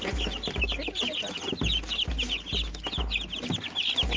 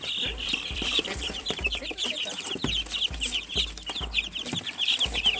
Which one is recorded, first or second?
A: first